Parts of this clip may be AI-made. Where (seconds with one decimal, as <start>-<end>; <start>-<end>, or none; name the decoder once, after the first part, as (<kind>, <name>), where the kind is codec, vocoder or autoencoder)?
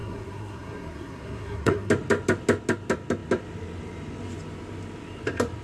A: 0.0-1.9 (codec, SNAC)